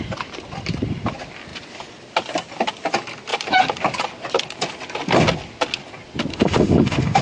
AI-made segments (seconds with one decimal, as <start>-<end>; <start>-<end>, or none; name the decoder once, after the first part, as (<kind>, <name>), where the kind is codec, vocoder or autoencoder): 6.3-7.2 (autoencoder, DAC-VAE)